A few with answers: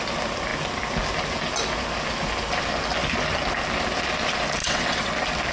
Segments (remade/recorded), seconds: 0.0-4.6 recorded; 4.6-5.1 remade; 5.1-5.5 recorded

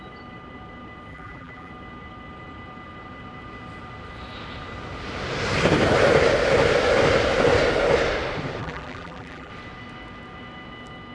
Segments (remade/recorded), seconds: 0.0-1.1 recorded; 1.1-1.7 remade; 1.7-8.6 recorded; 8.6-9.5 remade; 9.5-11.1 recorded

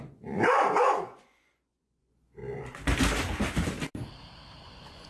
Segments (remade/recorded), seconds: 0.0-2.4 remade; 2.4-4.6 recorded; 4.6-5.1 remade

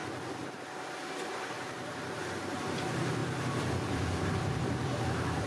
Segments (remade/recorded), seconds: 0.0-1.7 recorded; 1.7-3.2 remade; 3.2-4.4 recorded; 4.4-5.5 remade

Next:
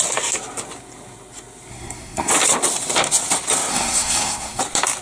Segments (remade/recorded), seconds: 0.0-1.7 recorded; 1.7-2.3 remade; 2.3-3.7 recorded; 3.7-4.6 remade; 4.6-5.0 recorded

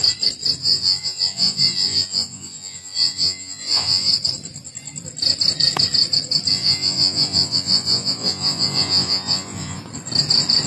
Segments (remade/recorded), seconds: 0.0-0.6 recorded; 0.6-4.1 remade; 4.1-6.5 recorded; 6.5-9.8 remade; 9.8-10.7 recorded